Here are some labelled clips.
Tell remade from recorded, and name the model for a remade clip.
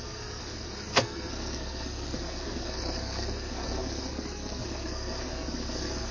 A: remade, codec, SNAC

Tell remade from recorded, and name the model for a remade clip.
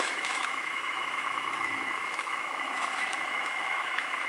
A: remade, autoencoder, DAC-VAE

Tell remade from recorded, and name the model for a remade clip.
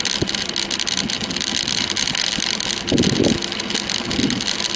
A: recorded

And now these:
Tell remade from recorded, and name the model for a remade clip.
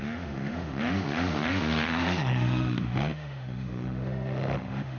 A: remade, autoencoder, DAC-VAE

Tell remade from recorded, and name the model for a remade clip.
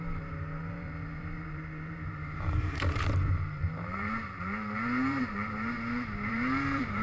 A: remade, vocoder, BigVGAN v2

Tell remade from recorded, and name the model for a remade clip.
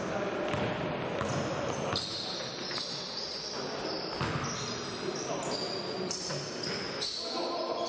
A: recorded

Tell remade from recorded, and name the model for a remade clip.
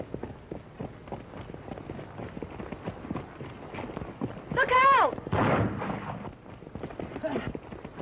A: recorded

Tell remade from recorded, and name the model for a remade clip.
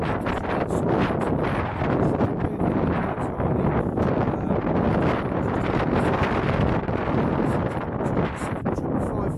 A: recorded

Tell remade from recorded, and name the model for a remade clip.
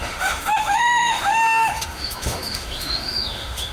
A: remade, autoencoder, DAC-VAE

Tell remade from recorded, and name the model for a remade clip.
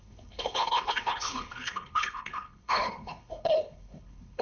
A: remade, codec, HILCodec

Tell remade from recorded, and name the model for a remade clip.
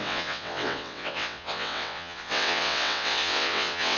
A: remade, vocoder, WaveNeXt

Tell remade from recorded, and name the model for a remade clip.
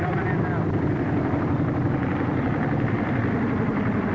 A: remade, vocoder, BigVGAN v2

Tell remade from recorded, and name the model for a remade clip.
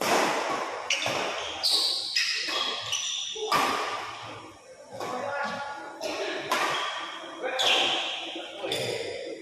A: recorded